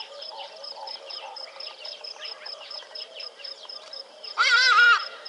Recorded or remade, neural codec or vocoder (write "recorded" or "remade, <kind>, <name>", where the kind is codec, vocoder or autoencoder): remade, vocoder, BigVGAN v2